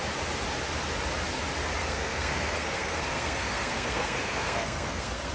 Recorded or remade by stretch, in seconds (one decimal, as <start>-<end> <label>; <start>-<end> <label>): 0.0-1.8 recorded; 1.8-5.3 remade